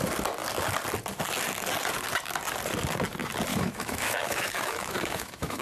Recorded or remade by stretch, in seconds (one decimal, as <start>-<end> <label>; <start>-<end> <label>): 0.0-3.5 recorded; 3.5-5.6 remade